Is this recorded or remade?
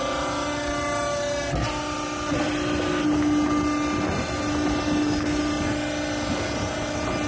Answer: recorded